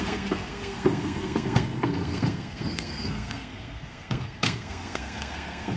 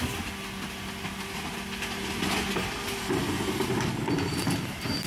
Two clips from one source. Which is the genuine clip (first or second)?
second